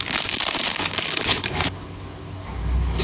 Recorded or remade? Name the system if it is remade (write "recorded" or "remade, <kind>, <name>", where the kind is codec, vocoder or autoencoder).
remade, codec, DAC